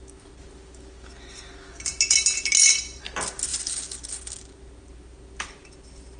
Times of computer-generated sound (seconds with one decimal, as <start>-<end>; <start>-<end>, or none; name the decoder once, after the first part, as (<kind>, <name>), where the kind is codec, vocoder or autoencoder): none